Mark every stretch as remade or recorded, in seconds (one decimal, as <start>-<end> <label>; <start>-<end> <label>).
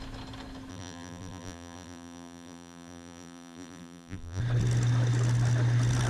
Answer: 0.0-0.7 recorded; 0.7-4.4 remade; 4.4-6.1 recorded